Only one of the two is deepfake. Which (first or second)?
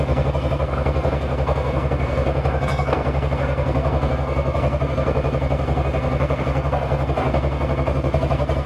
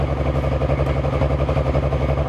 first